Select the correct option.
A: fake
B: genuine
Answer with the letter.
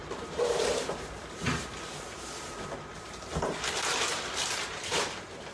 A